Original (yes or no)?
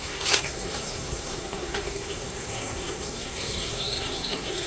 no